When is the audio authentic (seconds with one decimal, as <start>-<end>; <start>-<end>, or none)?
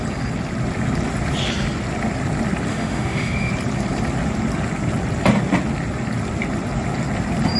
0.0-2.7; 3.5-7.6